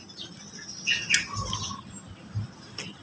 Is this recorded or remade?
recorded